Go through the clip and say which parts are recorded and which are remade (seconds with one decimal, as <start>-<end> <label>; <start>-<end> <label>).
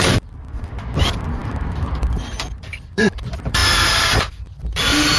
0.0-5.2 remade